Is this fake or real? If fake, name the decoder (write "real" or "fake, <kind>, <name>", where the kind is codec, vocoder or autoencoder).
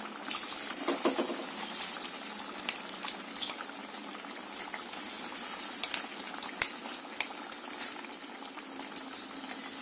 real